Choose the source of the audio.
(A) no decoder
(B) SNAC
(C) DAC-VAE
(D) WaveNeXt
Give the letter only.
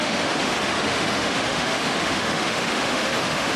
C